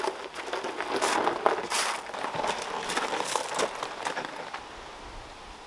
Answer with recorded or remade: recorded